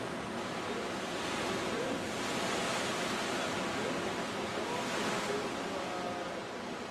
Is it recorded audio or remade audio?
recorded